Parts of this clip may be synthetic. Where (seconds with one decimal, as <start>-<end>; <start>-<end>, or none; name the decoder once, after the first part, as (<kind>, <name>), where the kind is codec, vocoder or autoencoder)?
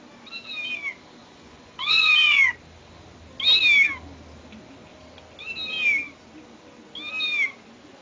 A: 1.2-2.5 (vocoder, Vocos)